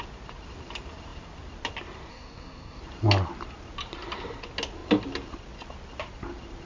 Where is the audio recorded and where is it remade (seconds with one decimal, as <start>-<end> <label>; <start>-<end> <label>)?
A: 0.0-2.1 recorded; 2.1-2.8 remade; 2.8-6.7 recorded